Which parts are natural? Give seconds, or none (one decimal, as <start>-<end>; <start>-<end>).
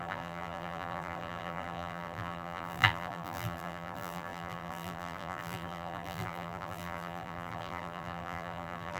none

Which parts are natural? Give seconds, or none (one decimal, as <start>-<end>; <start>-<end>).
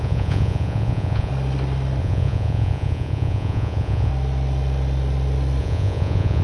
1.3-2.0; 4.1-5.6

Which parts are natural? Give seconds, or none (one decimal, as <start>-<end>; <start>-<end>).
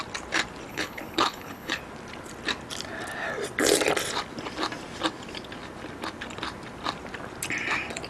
0.0-0.7; 1.8-8.1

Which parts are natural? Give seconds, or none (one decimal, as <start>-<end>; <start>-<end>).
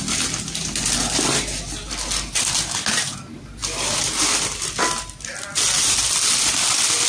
0.0-7.1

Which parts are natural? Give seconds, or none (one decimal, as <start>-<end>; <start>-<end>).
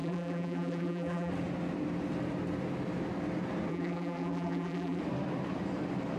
1.3-3.7; 5.0-6.2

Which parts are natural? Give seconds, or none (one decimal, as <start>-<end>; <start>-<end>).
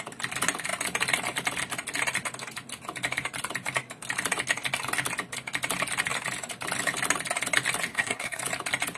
0.0-7.9; 8.4-9.0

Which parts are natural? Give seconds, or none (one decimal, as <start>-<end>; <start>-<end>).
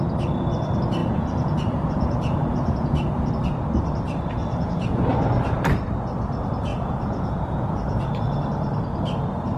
0.0-1.0; 3.3-4.4; 5.0-6.7; 8.4-9.6